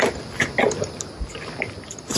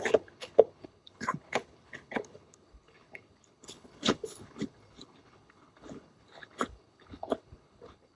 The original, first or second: first